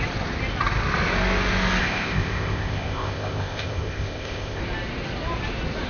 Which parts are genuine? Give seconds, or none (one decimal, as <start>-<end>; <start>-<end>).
0.0-1.8; 4.6-5.9